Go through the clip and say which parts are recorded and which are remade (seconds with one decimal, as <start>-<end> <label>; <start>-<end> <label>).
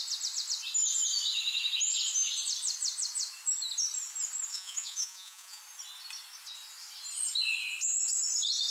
0.0-4.5 recorded; 4.5-5.6 remade; 5.6-8.7 recorded